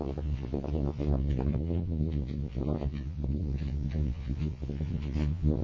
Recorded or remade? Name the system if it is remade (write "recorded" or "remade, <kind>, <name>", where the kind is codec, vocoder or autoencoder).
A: remade, vocoder, Vocos